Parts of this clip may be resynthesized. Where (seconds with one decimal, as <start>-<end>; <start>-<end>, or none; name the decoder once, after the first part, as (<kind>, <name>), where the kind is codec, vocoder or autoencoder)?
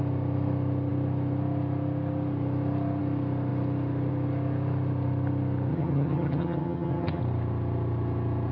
5.7-7.2 (vocoder, HiFi-GAN)